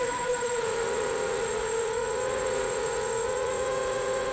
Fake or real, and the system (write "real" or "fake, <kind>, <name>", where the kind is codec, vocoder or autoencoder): fake, vocoder, Vocos